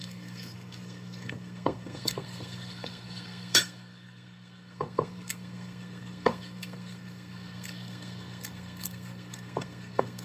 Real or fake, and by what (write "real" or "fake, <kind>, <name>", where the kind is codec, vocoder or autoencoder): fake, codec, SNAC